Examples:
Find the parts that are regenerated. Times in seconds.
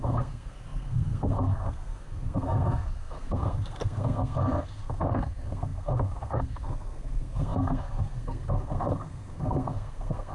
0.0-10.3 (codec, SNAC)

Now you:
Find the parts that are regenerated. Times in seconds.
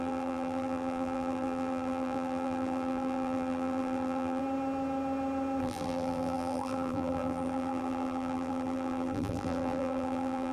0.0-4.4 (vocoder, BigVGAN v2); 5.6-10.5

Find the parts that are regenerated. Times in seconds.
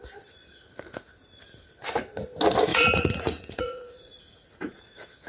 2.7-4.8 (vocoder, Vocos)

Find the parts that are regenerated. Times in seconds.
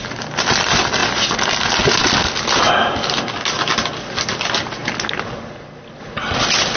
none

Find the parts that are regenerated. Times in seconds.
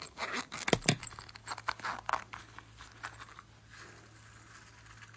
none